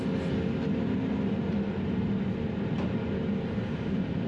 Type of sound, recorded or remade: recorded